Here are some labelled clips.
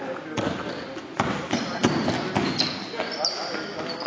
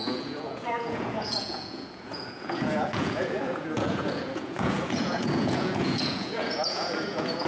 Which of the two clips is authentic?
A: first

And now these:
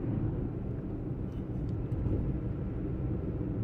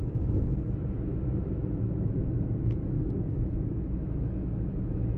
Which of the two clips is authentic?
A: first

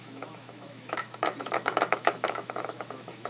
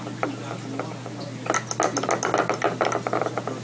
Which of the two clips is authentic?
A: second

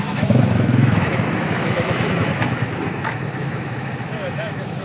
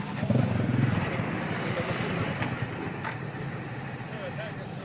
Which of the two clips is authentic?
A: second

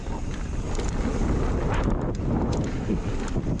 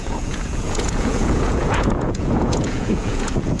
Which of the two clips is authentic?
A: first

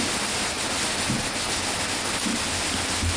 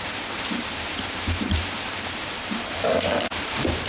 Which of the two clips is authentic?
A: first